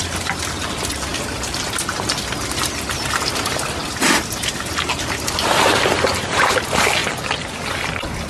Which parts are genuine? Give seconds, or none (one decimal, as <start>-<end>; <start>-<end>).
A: 0.0-8.3